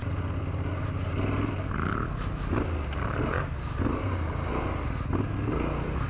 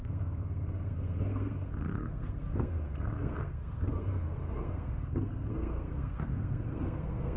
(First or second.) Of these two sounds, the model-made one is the second